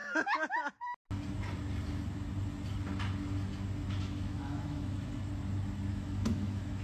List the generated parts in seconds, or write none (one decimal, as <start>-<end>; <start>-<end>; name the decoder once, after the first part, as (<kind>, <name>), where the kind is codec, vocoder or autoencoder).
4.0-5.0 (autoencoder, DAC-VAE); 5.9-6.8